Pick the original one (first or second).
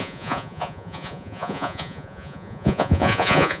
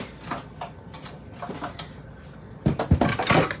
second